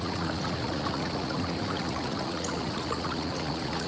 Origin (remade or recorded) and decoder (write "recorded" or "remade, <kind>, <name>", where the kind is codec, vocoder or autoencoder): remade, vocoder, Vocos